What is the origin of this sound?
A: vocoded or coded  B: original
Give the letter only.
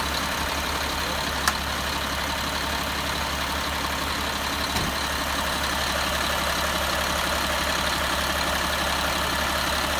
B